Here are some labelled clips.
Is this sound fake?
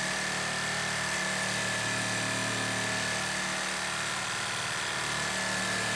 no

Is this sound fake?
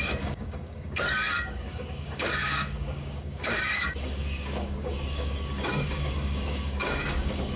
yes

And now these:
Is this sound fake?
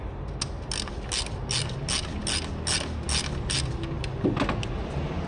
no